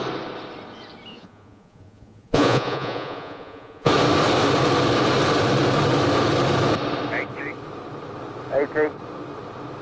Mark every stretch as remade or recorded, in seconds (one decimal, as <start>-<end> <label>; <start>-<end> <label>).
0.0-1.1 recorded; 1.1-3.9 remade; 3.9-9.8 recorded